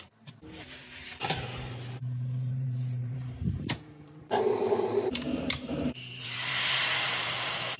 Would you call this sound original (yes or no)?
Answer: no